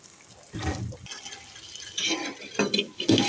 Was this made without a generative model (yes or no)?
yes